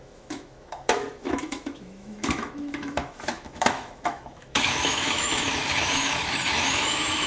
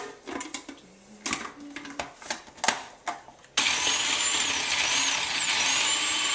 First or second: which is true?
second